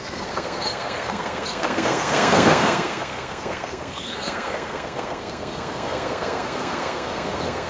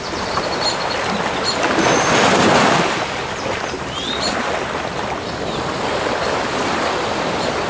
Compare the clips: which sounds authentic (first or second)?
second